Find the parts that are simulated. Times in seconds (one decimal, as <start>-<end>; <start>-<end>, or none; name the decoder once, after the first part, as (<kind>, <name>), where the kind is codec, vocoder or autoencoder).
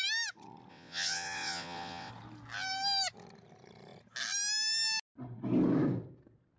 0.7-2.1 (vocoder, WaveNeXt)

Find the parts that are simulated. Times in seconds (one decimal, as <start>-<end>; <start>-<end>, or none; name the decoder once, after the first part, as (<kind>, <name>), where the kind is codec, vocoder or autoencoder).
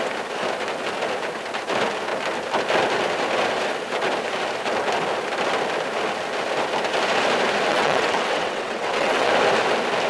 7.7-9.3 (vocoder, WaveNeXt)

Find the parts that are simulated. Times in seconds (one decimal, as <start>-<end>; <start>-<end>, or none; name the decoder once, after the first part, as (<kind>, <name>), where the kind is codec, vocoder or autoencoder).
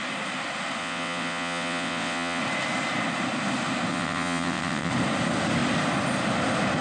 0.8-2.4 (vocoder, WaveNeXt); 3.9-4.9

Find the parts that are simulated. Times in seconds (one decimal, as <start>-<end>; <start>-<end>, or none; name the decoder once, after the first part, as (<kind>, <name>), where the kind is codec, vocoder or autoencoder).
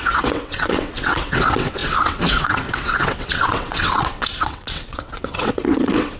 0.0-6.2 (vocoder, WaveNeXt)